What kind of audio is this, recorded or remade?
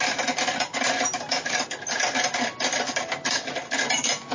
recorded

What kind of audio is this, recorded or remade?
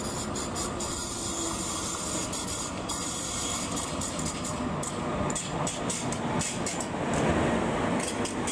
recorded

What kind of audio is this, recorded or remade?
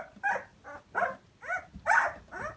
recorded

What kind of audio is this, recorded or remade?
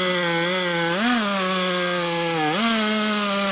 recorded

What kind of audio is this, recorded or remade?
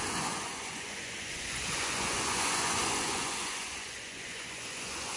remade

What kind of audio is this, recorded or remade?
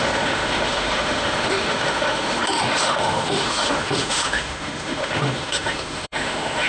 remade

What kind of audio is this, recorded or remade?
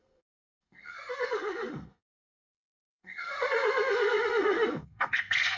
remade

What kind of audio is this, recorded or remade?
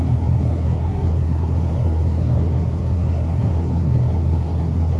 remade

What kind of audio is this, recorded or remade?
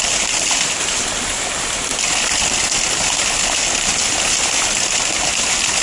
recorded